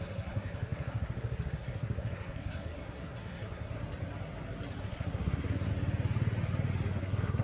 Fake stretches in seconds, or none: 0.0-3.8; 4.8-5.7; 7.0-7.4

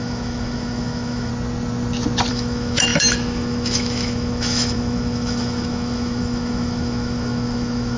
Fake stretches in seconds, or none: 0.0-1.3; 2.3-8.0